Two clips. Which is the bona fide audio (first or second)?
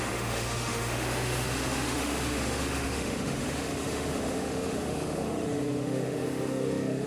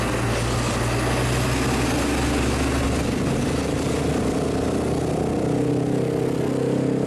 second